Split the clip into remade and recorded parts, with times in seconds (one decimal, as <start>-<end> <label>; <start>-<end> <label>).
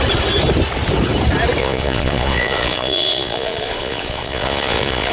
0.0-1.6 recorded; 1.6-5.1 remade